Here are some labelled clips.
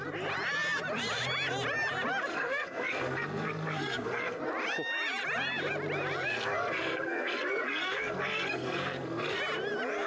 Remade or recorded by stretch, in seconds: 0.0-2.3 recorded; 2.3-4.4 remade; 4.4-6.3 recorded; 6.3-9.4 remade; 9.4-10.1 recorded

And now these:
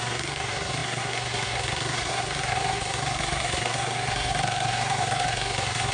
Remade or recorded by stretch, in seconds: 0.0-5.9 remade

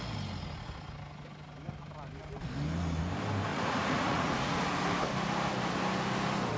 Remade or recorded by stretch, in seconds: 0.0-3.5 recorded; 3.5-4.6 remade; 4.6-6.6 recorded

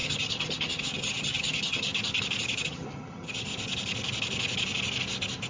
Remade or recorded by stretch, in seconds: 0.0-1.9 remade; 1.9-2.6 recorded; 2.6-3.5 remade; 3.5-5.5 recorded

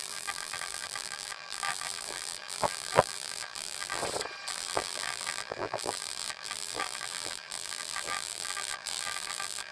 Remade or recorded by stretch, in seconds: 0.0-4.0 remade; 4.0-4.5 recorded; 4.5-9.7 remade

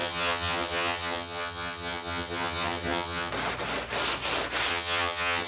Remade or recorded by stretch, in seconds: 0.0-3.3 remade; 3.3-4.7 recorded; 4.7-5.5 remade

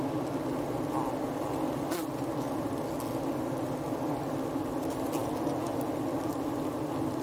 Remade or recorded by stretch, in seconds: 0.0-7.2 recorded